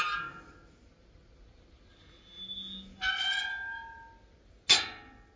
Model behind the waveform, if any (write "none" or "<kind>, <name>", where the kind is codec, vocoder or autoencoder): none